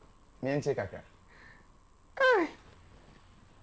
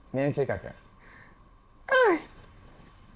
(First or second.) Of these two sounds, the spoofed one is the second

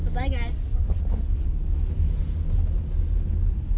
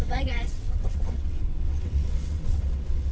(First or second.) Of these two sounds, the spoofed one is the second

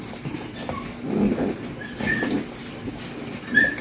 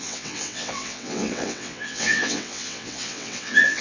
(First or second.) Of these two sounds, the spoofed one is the second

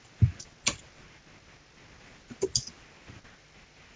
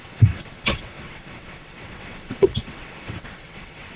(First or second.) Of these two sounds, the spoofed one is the second